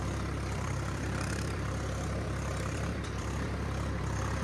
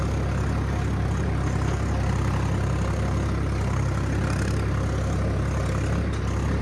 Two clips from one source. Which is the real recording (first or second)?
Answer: second